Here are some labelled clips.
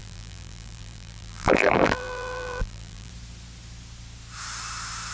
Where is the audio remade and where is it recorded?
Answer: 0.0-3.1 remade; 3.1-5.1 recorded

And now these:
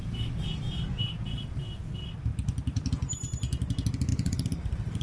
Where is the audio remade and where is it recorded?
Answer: 0.0-1.1 remade; 1.1-4.1 recorded; 4.1-5.0 remade

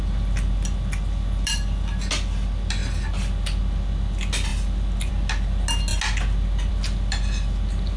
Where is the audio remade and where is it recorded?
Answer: 0.0-8.0 recorded

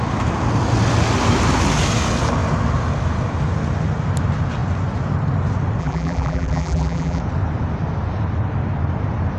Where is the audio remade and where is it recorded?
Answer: 0.0-5.8 recorded; 5.8-7.2 remade; 7.2-9.4 recorded

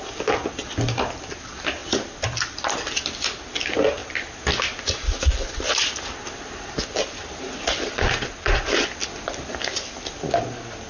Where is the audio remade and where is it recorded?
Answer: 0.0-1.8 recorded; 1.8-2.7 remade; 2.7-9.0 recorded; 9.0-10.2 remade; 10.2-10.9 recorded

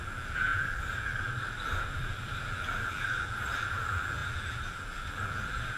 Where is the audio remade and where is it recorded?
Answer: 0.0-5.8 remade

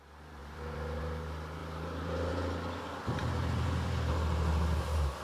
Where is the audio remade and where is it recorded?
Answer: 0.0-0.4 recorded; 0.4-1.0 remade; 1.0-1.6 recorded; 1.6-2.3 remade; 2.3-3.2 recorded; 3.2-4.1 remade; 4.1-5.2 recorded